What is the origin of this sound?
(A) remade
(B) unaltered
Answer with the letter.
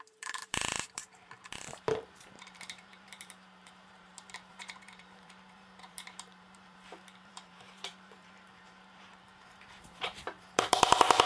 A